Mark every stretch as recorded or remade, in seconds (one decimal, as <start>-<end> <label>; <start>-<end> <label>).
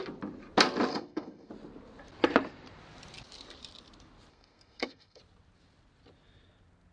0.0-0.9 recorded; 0.9-1.5 remade; 1.5-4.3 recorded; 4.3-5.2 remade; 5.2-6.9 recorded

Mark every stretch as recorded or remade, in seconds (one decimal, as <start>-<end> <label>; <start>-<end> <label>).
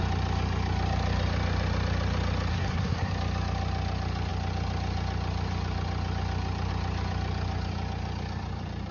0.0-2.5 recorded; 2.5-3.1 remade; 3.1-8.9 recorded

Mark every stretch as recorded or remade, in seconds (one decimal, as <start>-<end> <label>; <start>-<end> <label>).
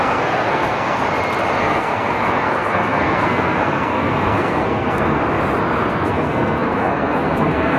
0.0-1.0 remade; 1.0-1.6 recorded; 1.6-5.2 remade; 5.2-5.9 recorded; 5.9-7.8 remade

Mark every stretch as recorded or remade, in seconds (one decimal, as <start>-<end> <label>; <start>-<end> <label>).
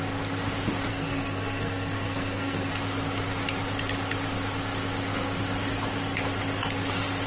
0.0-0.9 recorded; 0.9-2.7 remade; 2.7-7.3 recorded